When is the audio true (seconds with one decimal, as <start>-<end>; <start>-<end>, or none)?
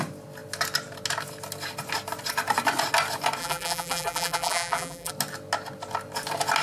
0.0-3.4; 5.1-6.6